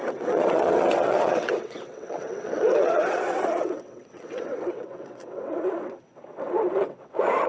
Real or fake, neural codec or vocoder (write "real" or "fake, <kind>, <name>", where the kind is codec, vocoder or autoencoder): fake, vocoder, WaveNeXt